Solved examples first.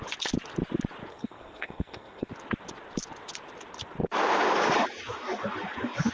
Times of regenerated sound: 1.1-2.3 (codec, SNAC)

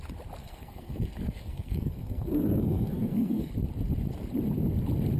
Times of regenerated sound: 0.4-3.5 (codec, SNAC)